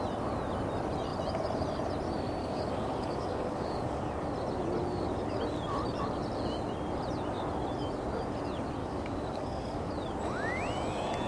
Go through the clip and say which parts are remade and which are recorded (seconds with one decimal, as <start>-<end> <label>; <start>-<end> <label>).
0.0-2.4 recorded; 2.4-4.1 remade; 4.1-8.8 recorded; 8.8-9.9 remade; 9.9-11.3 recorded